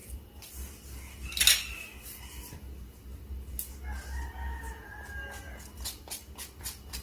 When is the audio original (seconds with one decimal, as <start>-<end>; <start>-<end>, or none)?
0.7-7.0